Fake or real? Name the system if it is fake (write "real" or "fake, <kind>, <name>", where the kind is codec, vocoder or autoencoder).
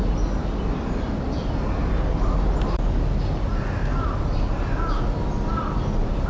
real